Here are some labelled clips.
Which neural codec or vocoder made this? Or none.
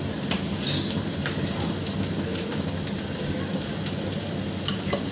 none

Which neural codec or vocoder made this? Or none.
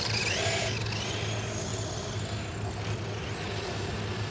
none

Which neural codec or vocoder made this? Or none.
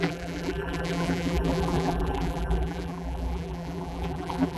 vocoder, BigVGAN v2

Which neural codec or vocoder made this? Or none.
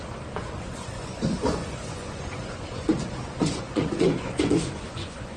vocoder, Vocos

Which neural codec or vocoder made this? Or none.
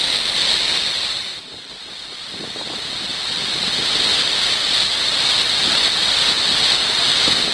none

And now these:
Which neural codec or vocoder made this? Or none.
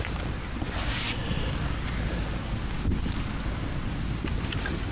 none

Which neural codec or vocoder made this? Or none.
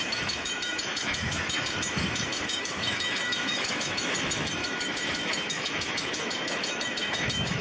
autoencoder, DAC-VAE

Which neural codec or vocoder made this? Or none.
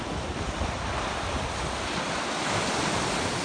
none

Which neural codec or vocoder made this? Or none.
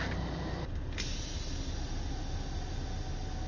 none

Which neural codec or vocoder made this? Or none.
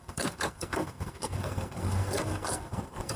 codec, SNAC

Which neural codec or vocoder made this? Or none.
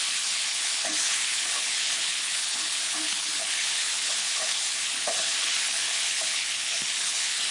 codec, HILCodec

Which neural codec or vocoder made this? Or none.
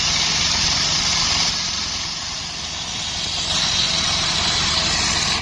none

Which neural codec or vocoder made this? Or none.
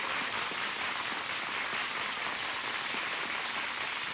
vocoder, BigVGAN v2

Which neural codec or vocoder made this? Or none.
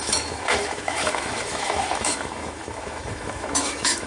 autoencoder, DAC-VAE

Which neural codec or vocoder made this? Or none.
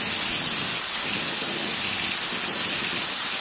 none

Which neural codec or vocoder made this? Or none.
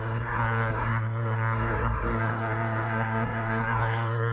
codec, SNAC